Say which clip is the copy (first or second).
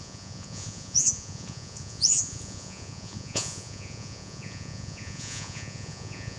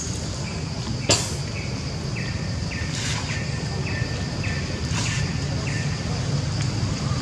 first